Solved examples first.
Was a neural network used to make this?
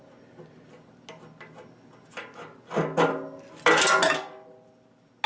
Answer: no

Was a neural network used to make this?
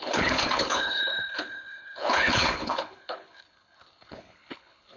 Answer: yes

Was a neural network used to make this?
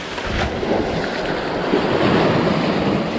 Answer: no